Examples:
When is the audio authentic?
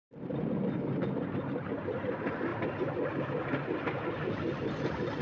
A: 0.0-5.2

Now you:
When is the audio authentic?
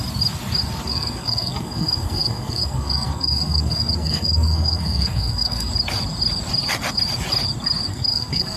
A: 0.0-0.9; 5.7-7.9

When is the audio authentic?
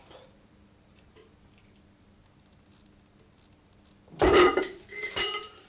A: 1.2-4.6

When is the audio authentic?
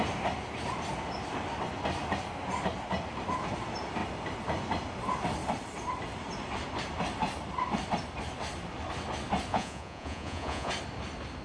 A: 0.0-9.5; 10.7-11.4